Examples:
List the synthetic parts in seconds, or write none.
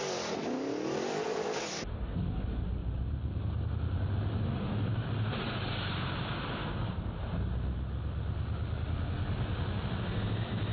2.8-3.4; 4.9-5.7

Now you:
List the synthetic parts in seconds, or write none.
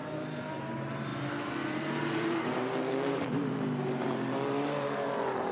0.0-5.5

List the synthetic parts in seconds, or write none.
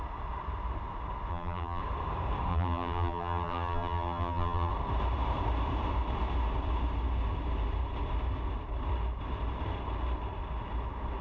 1.3-1.8; 2.5-4.7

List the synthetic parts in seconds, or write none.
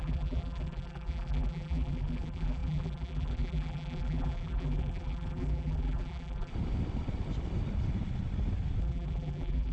0.0-6.5; 8.8-9.7